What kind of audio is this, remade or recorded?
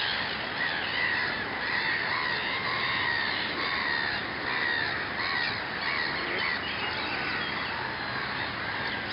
recorded